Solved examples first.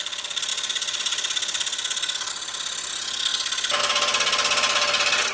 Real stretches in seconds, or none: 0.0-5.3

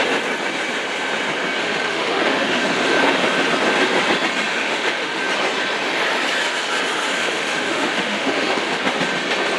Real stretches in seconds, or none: 0.0-1.6; 2.6-4.5; 5.2-7.2; 8.8-9.6

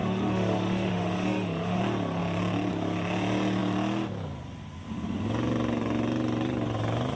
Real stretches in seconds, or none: 1.8-7.2

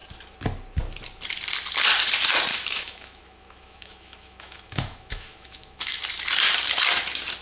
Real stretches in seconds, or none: 0.0-2.5; 6.0-7.4